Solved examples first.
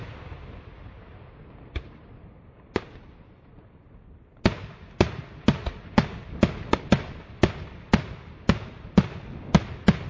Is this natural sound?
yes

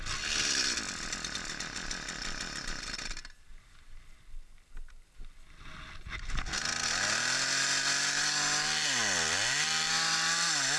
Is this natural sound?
yes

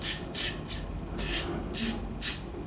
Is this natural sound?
yes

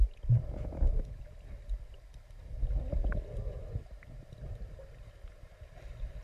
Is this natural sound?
yes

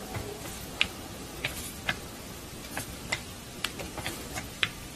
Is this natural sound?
no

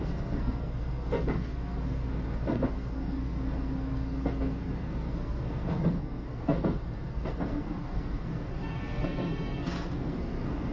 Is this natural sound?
no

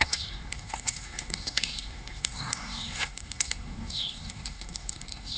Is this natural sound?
no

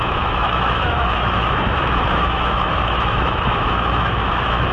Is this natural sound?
no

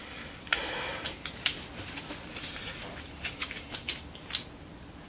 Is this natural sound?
no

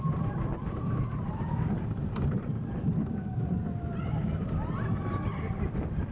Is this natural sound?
yes